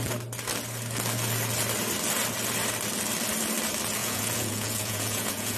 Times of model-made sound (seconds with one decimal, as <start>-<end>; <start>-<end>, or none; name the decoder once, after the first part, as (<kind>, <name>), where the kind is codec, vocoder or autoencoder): 4.0-5.6 (vocoder, Vocos)